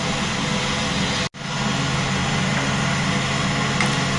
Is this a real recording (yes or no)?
yes